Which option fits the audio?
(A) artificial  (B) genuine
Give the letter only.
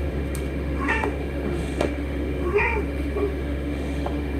A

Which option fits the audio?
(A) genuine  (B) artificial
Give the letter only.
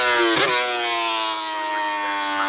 A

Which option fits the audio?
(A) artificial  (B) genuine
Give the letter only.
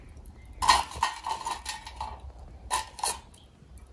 B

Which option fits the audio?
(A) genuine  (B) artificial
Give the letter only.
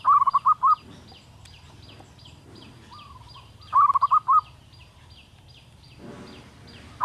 A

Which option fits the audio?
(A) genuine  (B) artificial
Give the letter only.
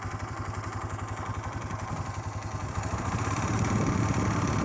B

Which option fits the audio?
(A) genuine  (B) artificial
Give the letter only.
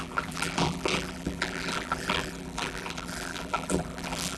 B